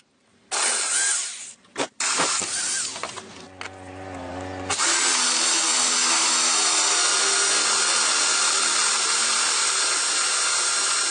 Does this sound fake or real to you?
real